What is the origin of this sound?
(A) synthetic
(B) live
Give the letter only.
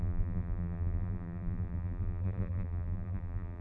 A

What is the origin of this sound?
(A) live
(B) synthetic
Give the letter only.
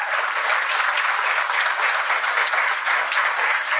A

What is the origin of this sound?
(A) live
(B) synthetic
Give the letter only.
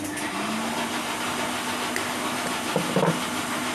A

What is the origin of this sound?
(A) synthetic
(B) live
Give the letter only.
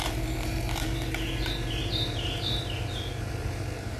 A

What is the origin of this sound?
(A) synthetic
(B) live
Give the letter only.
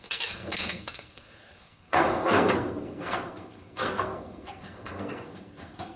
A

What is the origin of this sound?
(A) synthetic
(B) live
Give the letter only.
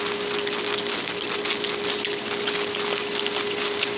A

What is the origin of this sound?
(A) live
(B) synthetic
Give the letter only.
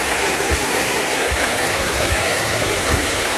B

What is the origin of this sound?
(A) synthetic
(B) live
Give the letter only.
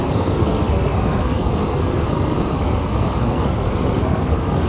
A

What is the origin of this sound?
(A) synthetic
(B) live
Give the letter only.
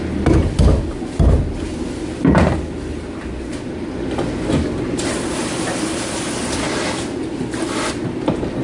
B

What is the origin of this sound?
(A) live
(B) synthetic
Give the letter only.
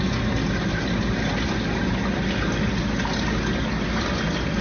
A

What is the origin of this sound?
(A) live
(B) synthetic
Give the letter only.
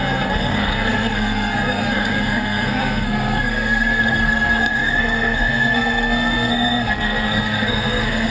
B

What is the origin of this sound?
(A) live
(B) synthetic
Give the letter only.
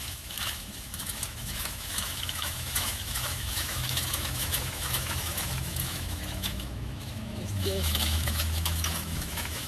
B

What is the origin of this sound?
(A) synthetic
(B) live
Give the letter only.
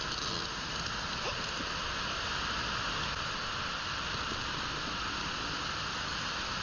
B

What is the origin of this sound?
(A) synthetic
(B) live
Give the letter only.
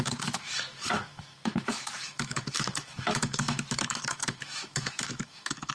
A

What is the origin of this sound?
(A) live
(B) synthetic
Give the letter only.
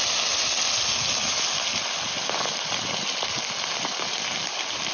A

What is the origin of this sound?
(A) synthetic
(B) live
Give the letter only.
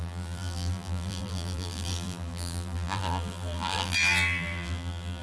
A